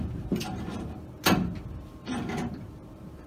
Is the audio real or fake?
fake